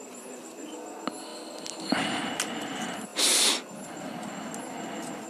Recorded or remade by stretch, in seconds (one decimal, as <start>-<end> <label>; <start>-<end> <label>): 0.0-5.3 recorded